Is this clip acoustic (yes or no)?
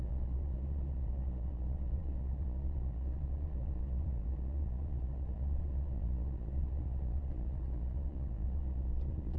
no